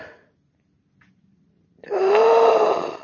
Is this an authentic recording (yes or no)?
yes